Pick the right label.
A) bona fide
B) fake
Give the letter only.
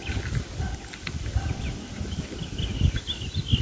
A